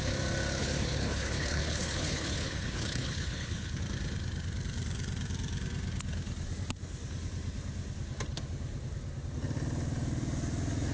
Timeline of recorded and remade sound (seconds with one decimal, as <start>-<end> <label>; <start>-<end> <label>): 0.0-0.6 recorded; 0.6-3.8 remade; 3.8-10.9 recorded